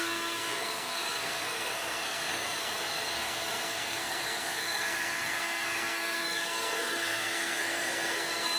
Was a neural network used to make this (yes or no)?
yes